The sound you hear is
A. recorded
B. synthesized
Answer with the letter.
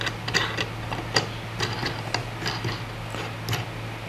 A